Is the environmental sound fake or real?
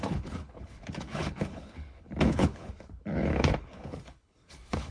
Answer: fake